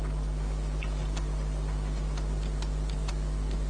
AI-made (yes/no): no